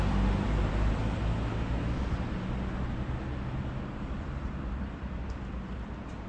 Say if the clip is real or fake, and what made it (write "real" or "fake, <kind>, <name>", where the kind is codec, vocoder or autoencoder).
real